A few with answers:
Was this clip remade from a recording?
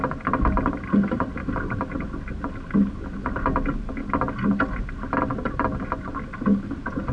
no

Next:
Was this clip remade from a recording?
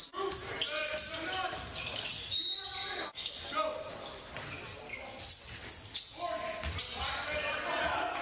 no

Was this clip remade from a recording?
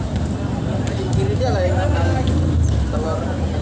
no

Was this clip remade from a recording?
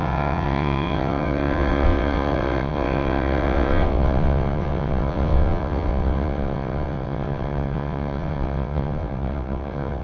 yes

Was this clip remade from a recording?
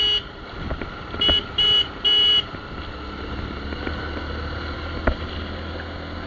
no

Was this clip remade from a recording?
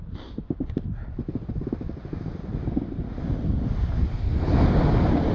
no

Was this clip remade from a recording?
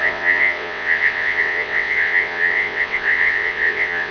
yes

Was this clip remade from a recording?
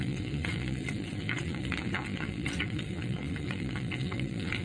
yes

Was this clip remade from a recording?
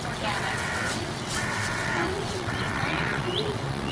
yes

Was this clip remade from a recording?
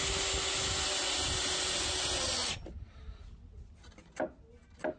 no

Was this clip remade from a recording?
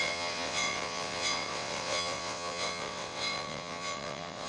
yes